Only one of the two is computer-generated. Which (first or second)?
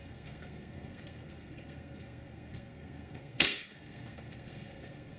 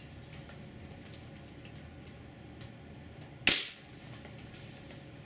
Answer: first